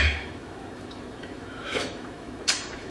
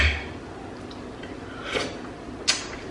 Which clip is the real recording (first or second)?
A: second